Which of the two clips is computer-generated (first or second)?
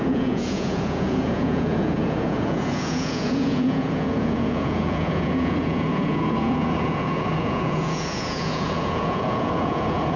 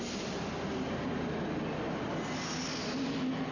first